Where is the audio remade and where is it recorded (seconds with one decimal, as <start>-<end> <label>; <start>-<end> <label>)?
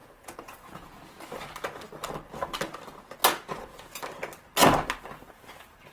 0.0-1.2 remade; 1.2-3.2 recorded; 3.2-4.0 remade; 4.0-5.9 recorded